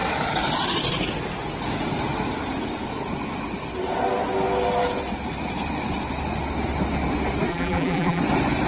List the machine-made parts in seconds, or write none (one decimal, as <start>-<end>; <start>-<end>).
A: 7.5-8.2